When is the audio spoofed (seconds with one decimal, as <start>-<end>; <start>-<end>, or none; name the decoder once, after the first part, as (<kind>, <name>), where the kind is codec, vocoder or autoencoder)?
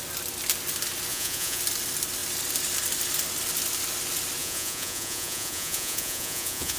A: 1.1-1.6 (vocoder, Vocos); 4.4-6.8